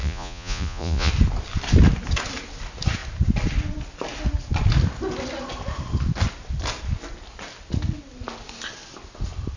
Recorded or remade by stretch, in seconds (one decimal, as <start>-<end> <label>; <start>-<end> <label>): 0.0-1.1 remade; 1.1-9.6 recorded